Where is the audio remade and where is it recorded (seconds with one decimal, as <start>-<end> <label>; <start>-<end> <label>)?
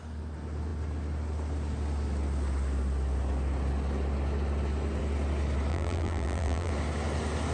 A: 0.0-5.7 recorded; 5.7-6.7 remade; 6.7-7.5 recorded